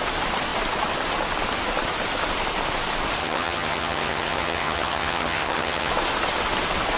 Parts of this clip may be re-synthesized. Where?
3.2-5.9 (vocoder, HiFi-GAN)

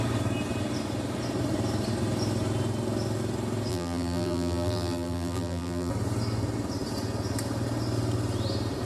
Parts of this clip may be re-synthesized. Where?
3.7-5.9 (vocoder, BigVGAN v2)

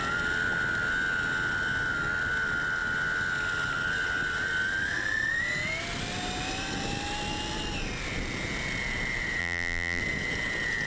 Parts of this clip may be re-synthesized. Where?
9.4-10.0 (vocoder, BigVGAN v2)

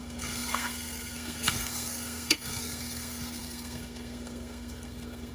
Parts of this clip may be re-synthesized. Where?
0.0-5.3 (codec, SNAC)